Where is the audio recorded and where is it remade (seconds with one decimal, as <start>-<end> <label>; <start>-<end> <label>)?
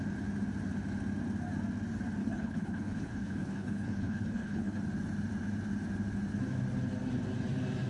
0.0-2.2 recorded; 2.2-4.8 remade; 4.8-7.9 recorded